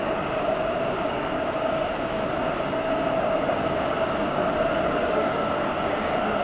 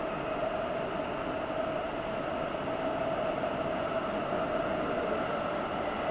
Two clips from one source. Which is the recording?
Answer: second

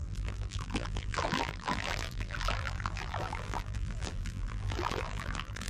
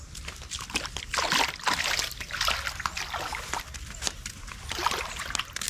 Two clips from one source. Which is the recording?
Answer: second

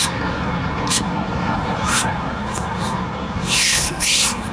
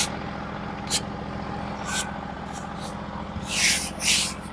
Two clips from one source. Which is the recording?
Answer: second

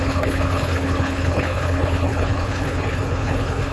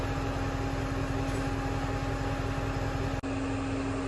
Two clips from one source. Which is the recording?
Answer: second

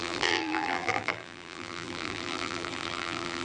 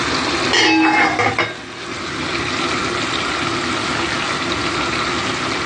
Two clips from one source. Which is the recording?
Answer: second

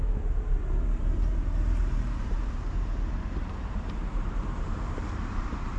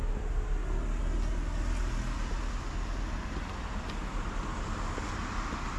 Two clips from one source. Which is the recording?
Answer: second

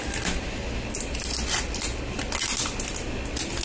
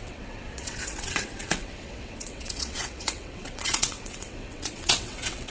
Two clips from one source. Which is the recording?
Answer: first